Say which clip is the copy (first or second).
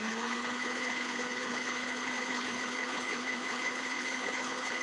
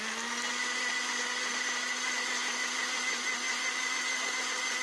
first